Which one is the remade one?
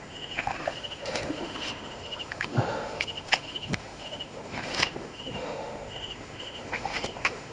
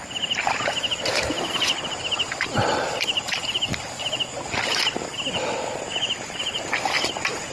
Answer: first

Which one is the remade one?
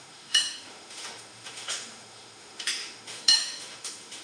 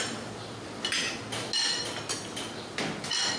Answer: first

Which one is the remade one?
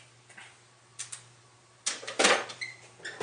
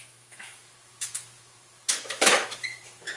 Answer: second